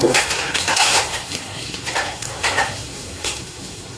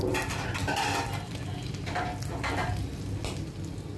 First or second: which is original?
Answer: second